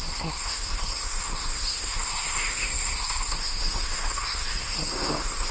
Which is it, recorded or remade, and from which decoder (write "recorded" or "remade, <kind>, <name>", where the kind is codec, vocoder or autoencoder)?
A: remade, codec, SNAC